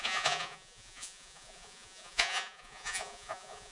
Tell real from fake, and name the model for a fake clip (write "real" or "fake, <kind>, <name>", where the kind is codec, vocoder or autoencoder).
fake, vocoder, Vocos